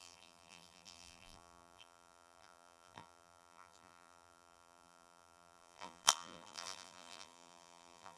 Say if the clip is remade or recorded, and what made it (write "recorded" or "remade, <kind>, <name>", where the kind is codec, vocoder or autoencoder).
remade, vocoder, BigVGAN v2